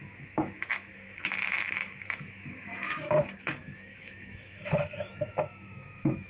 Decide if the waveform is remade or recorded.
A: remade